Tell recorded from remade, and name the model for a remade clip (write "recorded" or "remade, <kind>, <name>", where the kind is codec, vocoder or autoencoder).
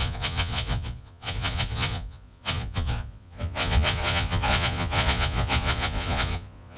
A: remade, vocoder, Vocos